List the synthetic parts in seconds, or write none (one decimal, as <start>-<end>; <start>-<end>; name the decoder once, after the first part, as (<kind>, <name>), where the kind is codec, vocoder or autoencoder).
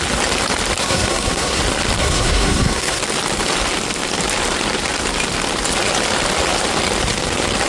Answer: 0.8-1.6 (codec, SNAC); 2.0-3.0